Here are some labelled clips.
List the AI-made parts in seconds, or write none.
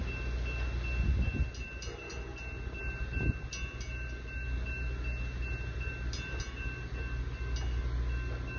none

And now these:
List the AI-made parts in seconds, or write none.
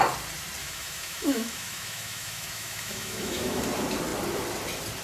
0.6-3.6 (autoencoder, DAC-VAE)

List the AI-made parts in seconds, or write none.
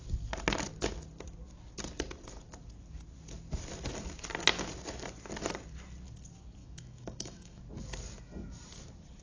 6.6-7.6 (autoencoder, DAC-VAE)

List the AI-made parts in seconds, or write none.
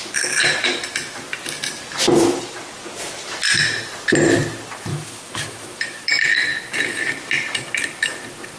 4.9-6.1 (autoencoder, DAC-VAE)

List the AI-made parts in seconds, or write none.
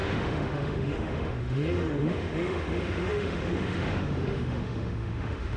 0.0-5.6 (autoencoder, DAC-VAE)